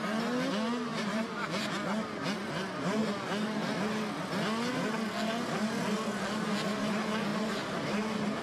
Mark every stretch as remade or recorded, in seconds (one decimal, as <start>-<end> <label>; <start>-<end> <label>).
0.0-0.9 recorded; 0.9-1.7 remade; 1.7-7.3 recorded; 7.3-8.4 remade